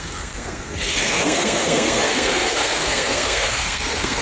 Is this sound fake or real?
fake